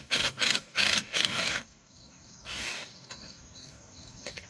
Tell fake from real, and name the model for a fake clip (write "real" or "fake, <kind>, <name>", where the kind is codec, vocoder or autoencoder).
fake, codec, DAC